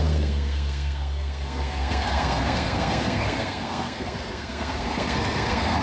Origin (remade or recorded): remade